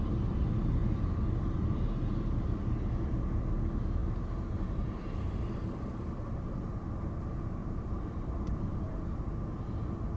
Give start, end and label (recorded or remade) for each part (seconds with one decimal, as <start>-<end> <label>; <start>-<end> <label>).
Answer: 0.0-4.0 recorded; 4.0-6.2 remade; 6.2-7.6 recorded; 7.6-8.9 remade; 8.9-10.2 recorded